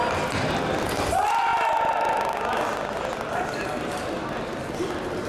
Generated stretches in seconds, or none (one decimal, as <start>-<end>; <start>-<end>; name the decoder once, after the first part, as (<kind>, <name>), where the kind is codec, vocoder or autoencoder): none